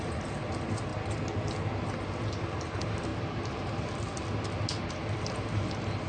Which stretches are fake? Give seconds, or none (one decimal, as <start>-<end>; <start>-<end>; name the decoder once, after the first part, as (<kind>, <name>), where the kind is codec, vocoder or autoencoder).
0.0-0.9 (vocoder, BigVGAN v2); 2.4-3.1; 4.9-6.1